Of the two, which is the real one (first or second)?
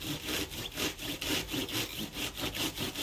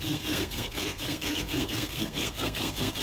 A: first